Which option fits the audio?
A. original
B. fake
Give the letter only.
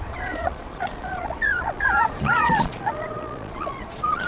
B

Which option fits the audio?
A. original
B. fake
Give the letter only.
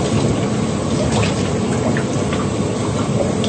A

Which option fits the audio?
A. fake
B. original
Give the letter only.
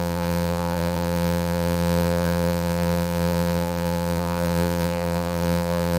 A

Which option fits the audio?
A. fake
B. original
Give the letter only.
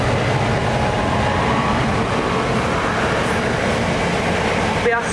B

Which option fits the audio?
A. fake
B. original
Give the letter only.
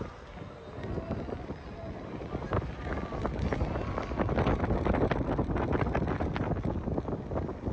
B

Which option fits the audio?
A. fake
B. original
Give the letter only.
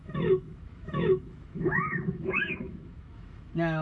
A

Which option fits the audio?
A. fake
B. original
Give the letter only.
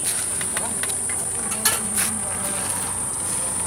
B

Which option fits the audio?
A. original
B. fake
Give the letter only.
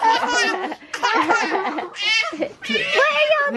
A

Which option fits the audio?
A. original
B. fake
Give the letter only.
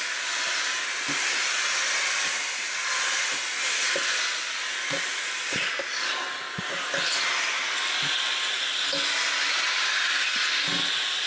A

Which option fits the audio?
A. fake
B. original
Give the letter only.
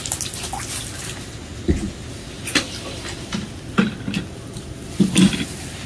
B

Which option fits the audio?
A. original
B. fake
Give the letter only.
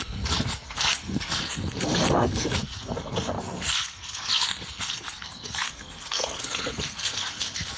B